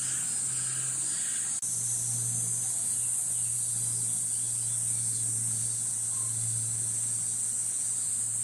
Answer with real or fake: real